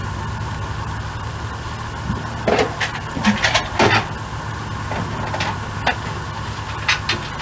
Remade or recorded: recorded